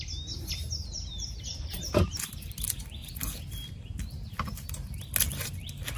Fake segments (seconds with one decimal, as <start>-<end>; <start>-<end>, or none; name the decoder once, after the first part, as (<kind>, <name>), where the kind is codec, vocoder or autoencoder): 1.5-2.1 (vocoder, BigVGAN v2)